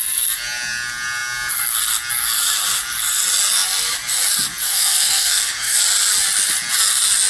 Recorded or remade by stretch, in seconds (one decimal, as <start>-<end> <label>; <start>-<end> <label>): 0.0-4.7 recorded; 4.7-5.8 remade; 5.8-7.3 recorded

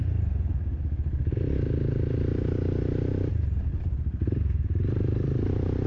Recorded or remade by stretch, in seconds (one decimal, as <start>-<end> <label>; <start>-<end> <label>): 0.0-1.2 recorded; 1.2-2.3 remade; 2.3-3.7 recorded; 3.7-5.9 remade

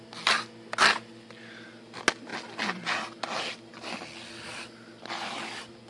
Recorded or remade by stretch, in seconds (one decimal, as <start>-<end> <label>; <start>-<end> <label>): 0.0-5.9 recorded

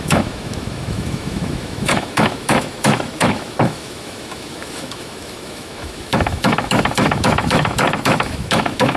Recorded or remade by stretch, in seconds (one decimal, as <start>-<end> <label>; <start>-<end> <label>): 0.0-9.0 remade